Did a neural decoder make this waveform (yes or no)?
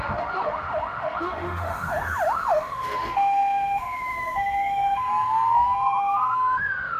yes